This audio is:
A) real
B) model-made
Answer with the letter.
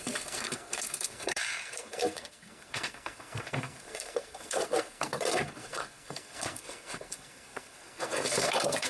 B